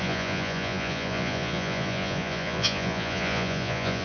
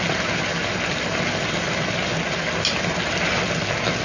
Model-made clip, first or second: first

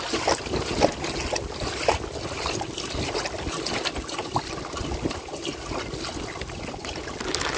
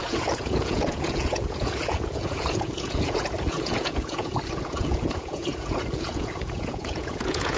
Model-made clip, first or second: second